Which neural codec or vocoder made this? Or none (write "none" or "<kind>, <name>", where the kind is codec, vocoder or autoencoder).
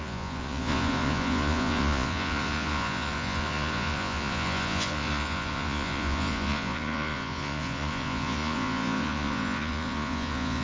vocoder, Vocos